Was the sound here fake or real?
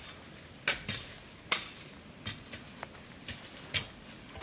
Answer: real